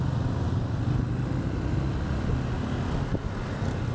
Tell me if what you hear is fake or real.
real